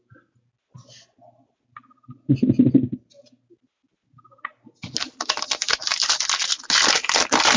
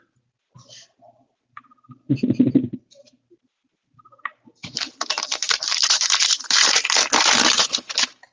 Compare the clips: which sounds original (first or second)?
first